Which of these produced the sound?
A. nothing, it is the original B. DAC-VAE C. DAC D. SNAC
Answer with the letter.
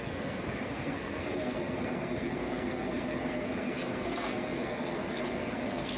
D